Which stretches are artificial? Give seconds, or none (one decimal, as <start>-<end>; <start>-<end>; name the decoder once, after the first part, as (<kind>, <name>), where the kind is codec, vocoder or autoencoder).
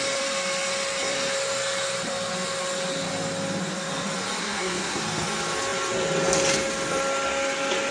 4.4-5.0 (codec, SNAC)